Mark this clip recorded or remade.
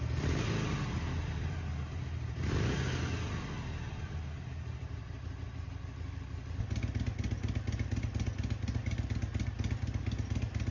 recorded